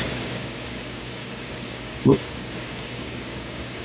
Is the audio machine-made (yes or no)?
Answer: yes